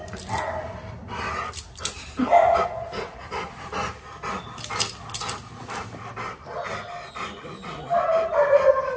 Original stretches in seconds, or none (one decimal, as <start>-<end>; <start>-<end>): 0.0-9.0